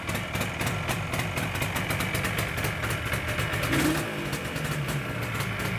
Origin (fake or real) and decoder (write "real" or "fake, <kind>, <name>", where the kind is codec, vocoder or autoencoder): real